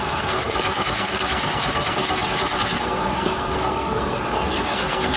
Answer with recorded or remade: remade